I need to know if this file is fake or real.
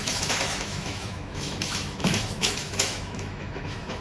fake